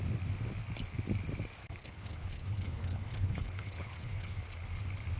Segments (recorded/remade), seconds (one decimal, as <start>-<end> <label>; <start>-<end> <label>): 0.0-1.6 recorded; 1.6-4.4 remade; 4.4-5.2 recorded